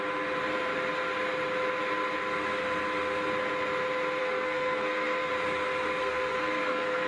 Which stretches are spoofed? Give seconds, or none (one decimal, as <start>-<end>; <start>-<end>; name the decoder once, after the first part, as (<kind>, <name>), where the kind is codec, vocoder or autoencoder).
4.2-5.3 (codec, SNAC); 6.0-7.1